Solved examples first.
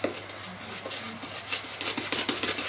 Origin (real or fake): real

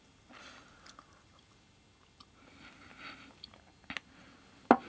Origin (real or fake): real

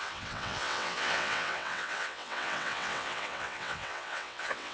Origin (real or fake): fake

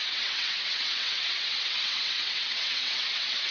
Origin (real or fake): fake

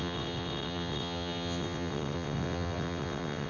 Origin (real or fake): fake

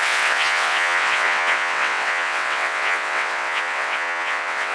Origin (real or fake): fake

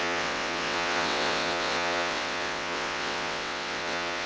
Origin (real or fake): fake